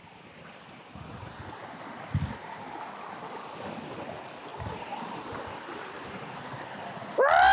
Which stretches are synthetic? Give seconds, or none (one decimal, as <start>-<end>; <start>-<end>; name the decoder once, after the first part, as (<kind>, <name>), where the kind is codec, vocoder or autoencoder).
none